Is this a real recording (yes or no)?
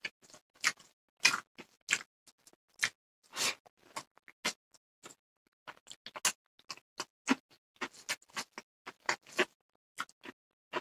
yes